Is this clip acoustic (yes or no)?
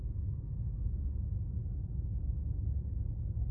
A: yes